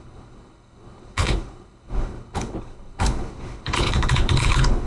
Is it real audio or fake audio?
fake